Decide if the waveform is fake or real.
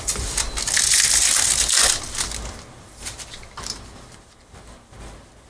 real